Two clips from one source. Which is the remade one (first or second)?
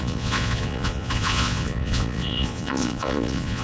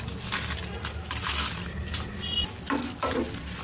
first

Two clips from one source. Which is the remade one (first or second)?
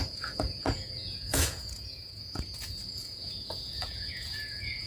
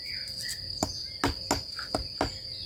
first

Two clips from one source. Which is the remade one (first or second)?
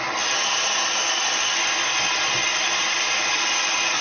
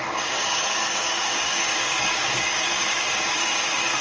second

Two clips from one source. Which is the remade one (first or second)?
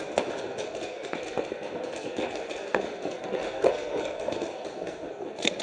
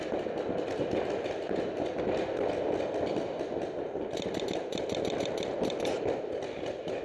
first